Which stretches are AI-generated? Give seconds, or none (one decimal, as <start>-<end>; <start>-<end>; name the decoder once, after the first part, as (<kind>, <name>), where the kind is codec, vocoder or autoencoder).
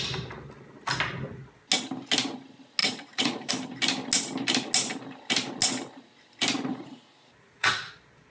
2.8-3.5 (vocoder, Vocos); 6.7-7.9